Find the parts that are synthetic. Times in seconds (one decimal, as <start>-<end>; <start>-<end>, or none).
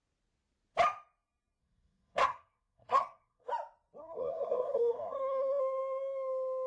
1.6-3.5; 4.0-5.6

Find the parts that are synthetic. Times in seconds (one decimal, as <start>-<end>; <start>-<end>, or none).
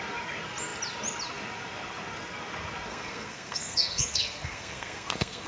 2.9-5.5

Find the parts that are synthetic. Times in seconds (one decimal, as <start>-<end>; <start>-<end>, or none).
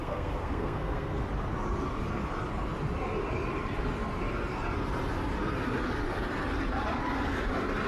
0.0-1.2